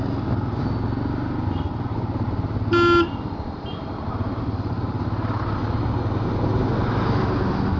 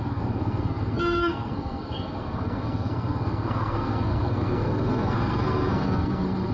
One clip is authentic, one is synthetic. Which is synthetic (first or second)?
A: second